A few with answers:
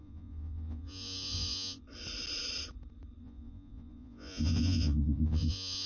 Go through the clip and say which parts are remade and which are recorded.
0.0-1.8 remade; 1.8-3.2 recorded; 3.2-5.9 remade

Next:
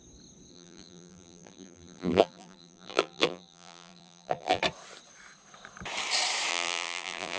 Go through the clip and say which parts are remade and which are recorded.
0.0-0.5 recorded; 0.5-4.6 remade; 4.6-6.5 recorded; 6.5-7.4 remade

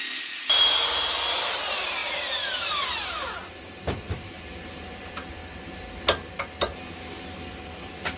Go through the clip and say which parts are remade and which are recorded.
0.0-5.4 remade; 5.4-7.0 recorded; 7.0-8.2 remade

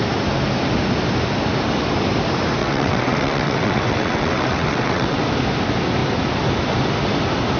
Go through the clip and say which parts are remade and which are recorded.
0.0-2.6 recorded; 2.6-5.2 remade; 5.2-7.6 recorded